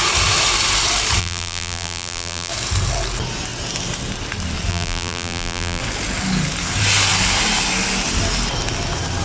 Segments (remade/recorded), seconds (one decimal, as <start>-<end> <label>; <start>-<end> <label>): 0.0-1.2 recorded; 1.2-2.5 remade; 2.5-4.7 recorded; 4.7-5.8 remade; 5.8-9.2 recorded